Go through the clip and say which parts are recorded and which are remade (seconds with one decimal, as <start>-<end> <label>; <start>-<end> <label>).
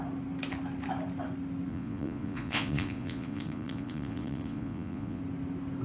0.0-1.7 recorded; 1.7-5.2 remade; 5.2-5.8 recorded